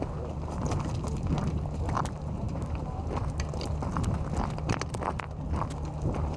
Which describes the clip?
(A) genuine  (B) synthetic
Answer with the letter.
A